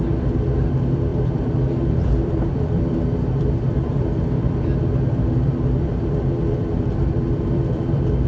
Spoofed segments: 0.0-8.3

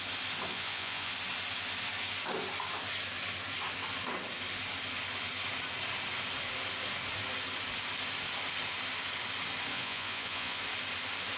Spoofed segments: 0.5-1.1; 9.7-10.6